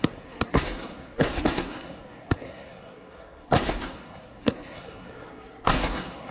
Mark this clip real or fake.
fake